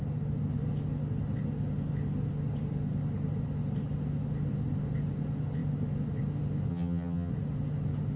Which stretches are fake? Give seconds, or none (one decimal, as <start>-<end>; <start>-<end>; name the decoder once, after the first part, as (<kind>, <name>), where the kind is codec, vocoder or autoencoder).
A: 6.7-7.3 (vocoder, HiFi-GAN)